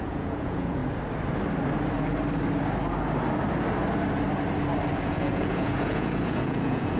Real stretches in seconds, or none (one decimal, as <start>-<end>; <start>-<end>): 0.8-5.0